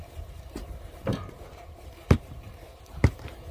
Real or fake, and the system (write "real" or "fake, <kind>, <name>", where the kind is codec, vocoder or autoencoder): fake, vocoder, BigVGAN v2